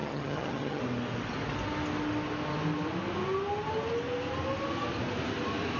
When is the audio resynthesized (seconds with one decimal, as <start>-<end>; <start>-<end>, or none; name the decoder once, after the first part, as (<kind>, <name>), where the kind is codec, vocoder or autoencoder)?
0.0-0.8 (vocoder, HiFi-GAN)